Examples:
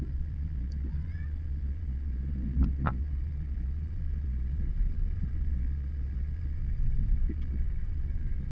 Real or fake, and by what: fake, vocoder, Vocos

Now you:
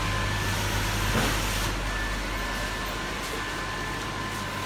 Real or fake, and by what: real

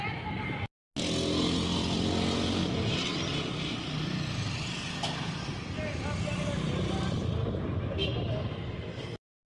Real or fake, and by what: real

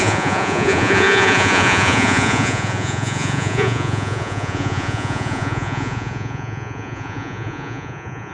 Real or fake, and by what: fake, vocoder, Vocos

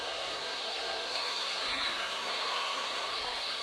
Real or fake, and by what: fake, codec, SNAC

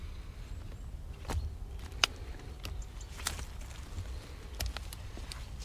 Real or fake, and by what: real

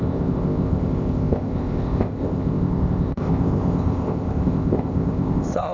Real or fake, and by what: fake, codec, ZipCodec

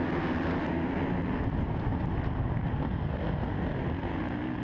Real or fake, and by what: real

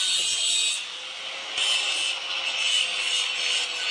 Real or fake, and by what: real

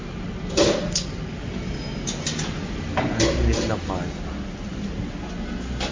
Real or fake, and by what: real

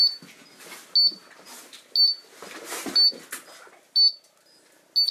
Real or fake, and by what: real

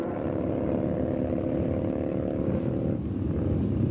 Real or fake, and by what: real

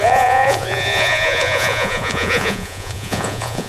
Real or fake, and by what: fake, vocoder, Vocos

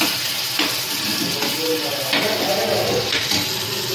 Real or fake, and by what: real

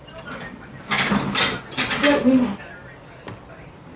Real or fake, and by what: real